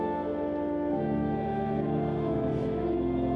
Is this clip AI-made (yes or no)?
no